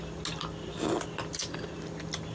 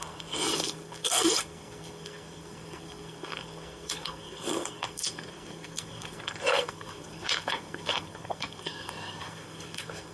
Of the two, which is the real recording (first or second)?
first